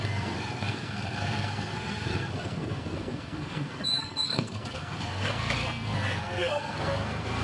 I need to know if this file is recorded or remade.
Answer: remade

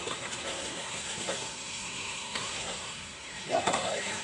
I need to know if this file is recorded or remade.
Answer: remade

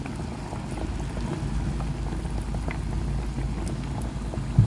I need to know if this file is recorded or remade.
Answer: recorded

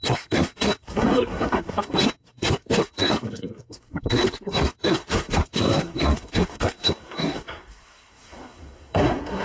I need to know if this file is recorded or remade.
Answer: remade